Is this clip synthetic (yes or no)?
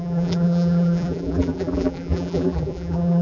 yes